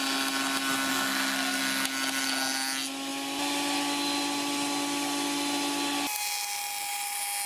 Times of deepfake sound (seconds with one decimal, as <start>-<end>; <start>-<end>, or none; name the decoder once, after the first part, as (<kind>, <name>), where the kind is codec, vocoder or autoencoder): 0.9-1.6 (codec, SNAC)